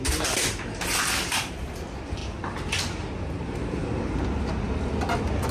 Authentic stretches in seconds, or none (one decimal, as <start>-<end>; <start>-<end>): 0.0-5.5